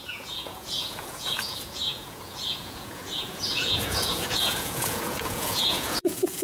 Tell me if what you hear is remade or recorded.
remade